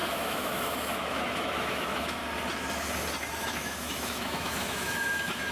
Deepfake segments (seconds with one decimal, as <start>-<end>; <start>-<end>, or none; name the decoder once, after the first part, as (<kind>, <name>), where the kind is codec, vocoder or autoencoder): 0.0-2.2 (autoencoder, DAC-VAE); 3.4-5.5